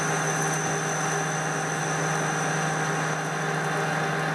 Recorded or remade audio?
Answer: recorded